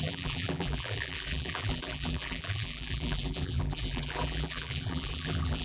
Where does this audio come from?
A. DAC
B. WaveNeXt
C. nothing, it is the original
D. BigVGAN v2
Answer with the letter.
D